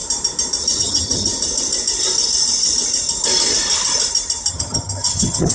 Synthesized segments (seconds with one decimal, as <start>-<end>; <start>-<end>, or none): 0.8-1.3; 4.5-5.5